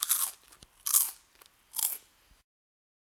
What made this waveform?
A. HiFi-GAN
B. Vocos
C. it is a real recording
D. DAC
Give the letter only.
C